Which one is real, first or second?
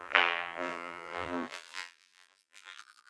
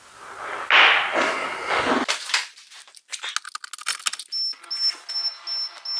second